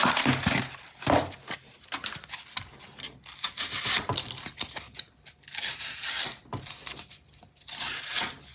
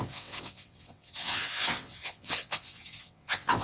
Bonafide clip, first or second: first